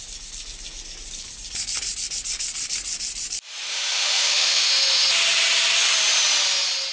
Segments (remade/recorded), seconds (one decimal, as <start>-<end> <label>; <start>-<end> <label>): 0.0-3.7 recorded; 3.7-4.7 remade; 4.7-6.9 recorded